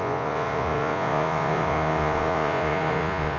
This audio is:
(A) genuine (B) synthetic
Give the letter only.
B